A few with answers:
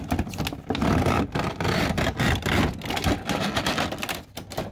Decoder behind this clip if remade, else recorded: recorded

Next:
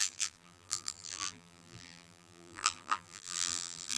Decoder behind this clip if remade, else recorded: remade, vocoder, BigVGAN v2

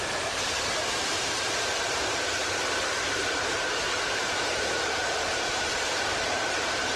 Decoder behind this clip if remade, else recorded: remade, vocoder, BigVGAN v2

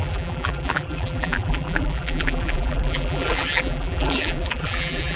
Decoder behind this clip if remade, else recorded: remade, vocoder, BigVGAN v2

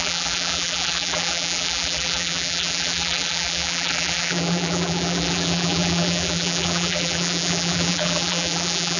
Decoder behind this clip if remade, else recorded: remade, vocoder, BigVGAN v2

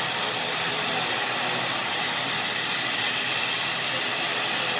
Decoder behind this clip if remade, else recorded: recorded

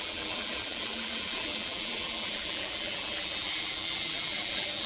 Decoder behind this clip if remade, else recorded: remade, vocoder, BigVGAN v2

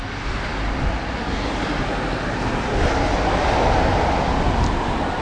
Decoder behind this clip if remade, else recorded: recorded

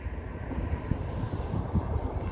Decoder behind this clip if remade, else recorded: recorded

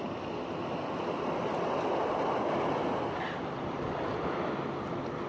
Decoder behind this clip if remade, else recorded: recorded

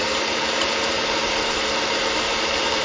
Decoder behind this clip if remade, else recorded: remade, vocoder, BigVGAN v2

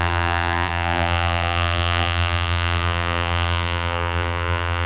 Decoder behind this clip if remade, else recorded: remade, vocoder, BigVGAN v2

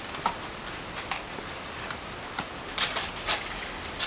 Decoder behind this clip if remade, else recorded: recorded